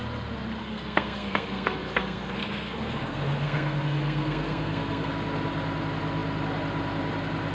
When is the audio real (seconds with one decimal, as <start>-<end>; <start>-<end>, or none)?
0.0-0.6; 5.1-7.5